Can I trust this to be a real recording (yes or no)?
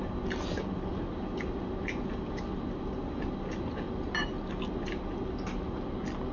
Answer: yes